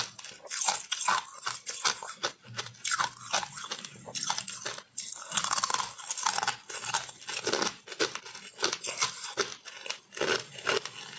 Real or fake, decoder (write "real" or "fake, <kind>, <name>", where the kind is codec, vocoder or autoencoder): real